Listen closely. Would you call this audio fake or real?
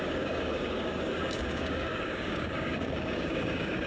fake